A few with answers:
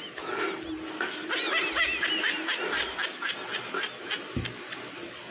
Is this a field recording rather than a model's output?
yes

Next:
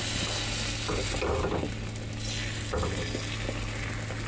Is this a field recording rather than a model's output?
yes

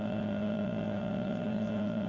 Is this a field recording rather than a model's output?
no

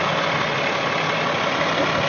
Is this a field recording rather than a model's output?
yes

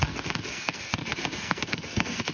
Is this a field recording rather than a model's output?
no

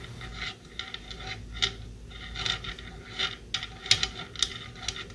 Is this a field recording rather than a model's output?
yes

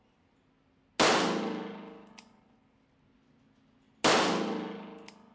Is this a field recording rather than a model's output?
yes